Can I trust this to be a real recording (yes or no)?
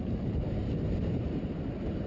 no